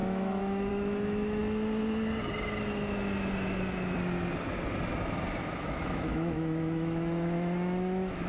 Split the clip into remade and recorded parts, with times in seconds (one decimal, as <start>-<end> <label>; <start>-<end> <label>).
0.0-1.4 remade; 1.4-5.5 recorded; 5.5-8.3 remade